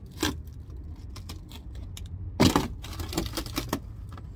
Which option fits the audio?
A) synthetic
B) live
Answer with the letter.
B